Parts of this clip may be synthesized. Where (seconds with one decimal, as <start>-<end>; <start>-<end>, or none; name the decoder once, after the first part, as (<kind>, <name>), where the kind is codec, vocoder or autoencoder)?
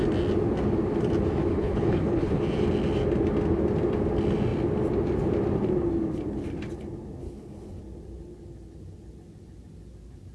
1.5-2.4 (codec, HILCodec); 7.2-7.8